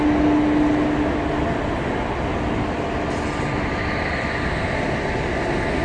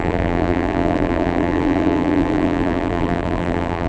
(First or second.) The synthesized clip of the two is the second